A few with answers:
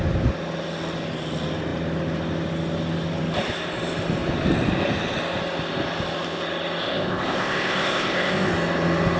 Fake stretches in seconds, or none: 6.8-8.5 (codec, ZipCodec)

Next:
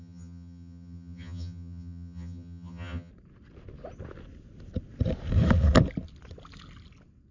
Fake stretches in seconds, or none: 0.0-3.1 (vocoder, HiFi-GAN)

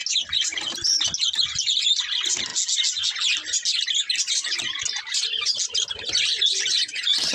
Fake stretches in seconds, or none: none

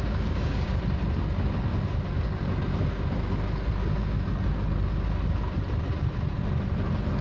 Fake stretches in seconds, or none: 0.0-0.8 (codec, DAC)

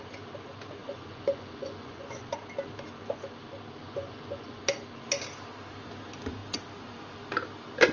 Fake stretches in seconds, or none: 0.8-2.3 (vocoder, Vocos); 3.8-4.6

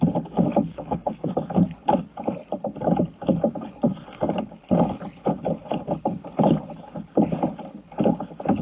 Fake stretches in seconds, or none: 0.7-1.3 (codec, SNAC)

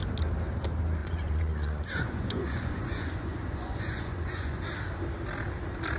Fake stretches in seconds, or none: 1.0-4.6 (vocoder, Vocos)